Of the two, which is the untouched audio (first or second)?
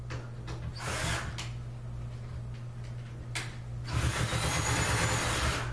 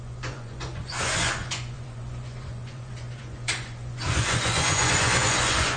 first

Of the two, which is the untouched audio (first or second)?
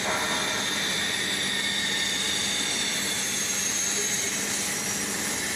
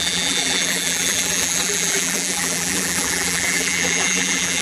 first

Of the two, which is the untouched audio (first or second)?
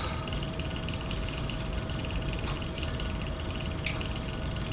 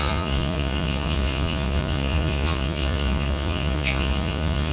first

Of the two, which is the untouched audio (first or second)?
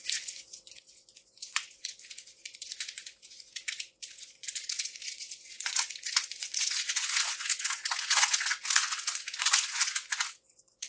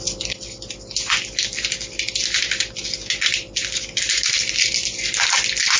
second